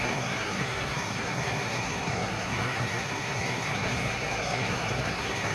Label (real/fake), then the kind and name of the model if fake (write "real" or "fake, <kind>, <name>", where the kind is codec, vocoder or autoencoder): fake, codec, SNAC